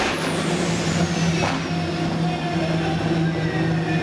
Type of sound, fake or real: real